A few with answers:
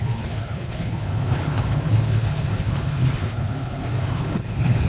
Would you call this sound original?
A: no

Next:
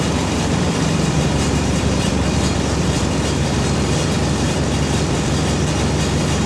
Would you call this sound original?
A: no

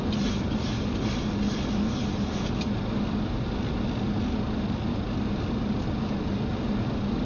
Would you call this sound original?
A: yes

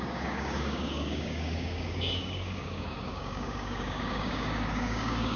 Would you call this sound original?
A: no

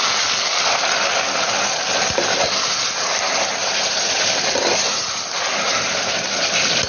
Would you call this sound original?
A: yes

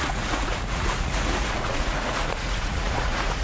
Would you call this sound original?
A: no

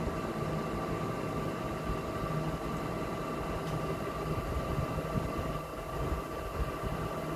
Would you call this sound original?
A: yes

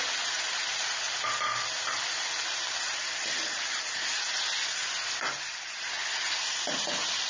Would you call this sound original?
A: yes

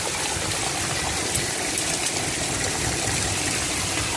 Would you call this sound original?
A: yes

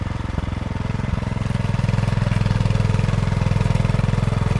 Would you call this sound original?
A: yes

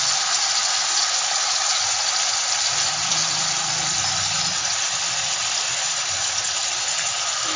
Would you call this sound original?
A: yes